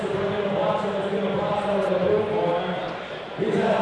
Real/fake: real